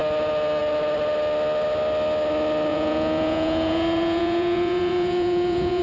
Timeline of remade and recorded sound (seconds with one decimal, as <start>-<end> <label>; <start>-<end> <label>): 0.0-2.7 recorded; 2.7-5.8 remade